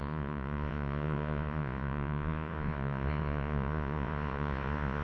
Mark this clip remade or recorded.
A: remade